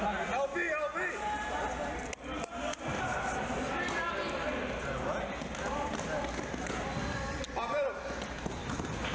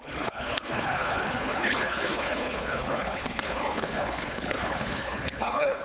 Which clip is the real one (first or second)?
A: first